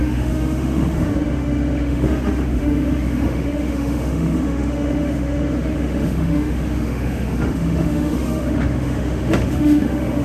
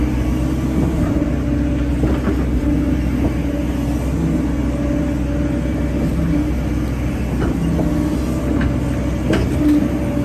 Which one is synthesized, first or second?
first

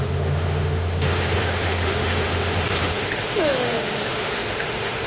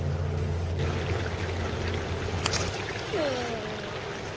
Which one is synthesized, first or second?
first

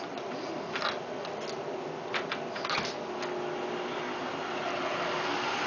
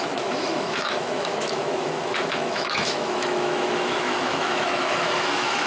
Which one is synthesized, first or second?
second